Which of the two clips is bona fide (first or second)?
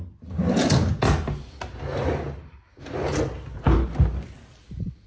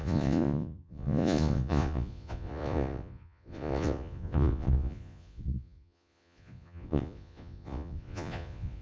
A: first